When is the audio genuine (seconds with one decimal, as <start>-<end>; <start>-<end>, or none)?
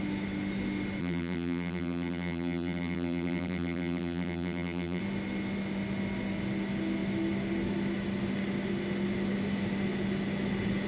0.0-1.0; 5.0-10.9